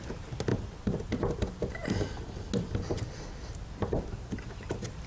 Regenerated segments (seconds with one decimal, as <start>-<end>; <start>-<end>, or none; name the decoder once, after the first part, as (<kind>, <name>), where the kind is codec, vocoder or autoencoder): none